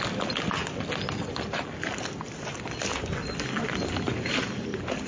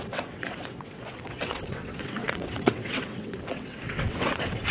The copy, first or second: second